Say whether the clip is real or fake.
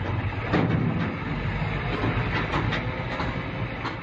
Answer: real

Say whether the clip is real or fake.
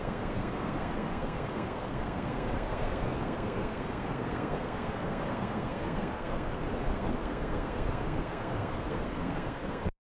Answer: fake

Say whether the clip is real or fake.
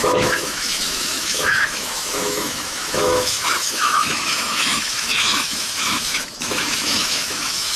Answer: fake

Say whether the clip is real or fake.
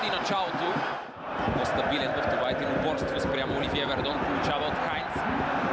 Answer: real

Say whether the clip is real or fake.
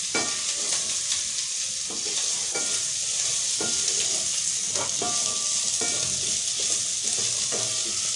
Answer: real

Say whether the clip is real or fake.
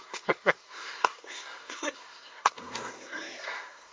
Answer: fake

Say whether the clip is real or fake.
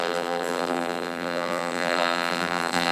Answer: fake